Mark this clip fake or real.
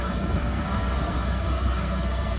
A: fake